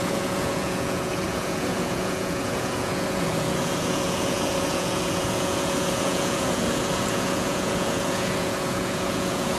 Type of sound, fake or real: fake